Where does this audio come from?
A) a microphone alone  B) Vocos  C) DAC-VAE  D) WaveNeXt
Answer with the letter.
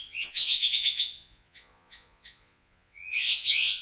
B